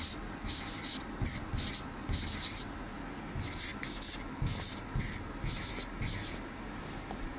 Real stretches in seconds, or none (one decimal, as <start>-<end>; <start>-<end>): 0.0-7.4